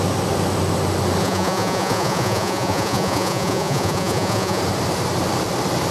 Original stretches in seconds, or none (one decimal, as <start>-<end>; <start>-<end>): 0.0-1.2; 4.6-5.9